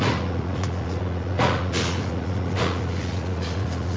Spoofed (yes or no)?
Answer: yes